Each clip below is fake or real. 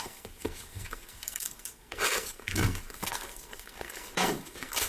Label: fake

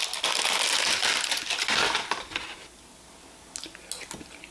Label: real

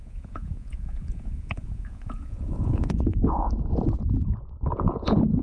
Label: fake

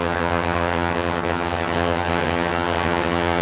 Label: fake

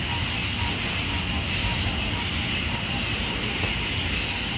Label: real